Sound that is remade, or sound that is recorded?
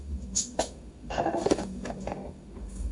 remade